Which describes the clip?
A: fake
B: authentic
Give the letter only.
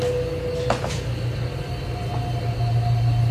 B